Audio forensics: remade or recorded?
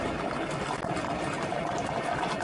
recorded